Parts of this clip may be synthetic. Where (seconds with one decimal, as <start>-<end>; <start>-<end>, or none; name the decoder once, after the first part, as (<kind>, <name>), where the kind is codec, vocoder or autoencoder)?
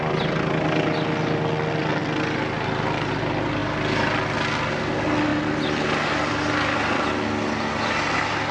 none